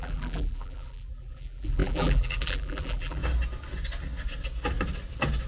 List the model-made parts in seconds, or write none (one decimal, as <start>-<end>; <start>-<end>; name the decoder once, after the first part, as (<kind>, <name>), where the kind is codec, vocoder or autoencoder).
0.0-3.2 (vocoder, BigVGAN v2)